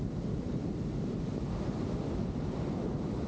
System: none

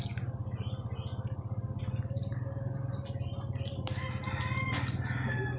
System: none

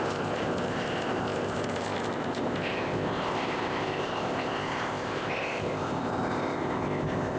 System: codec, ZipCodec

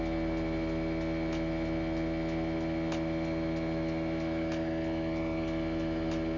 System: none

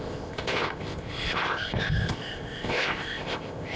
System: codec, ZipCodec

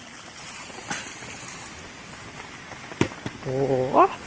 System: none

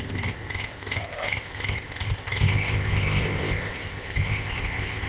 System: codec, ZipCodec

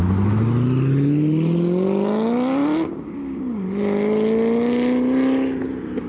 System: none